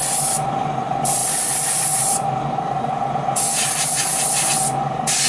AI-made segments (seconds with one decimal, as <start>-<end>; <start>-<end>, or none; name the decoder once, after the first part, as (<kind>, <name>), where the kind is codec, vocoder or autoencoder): none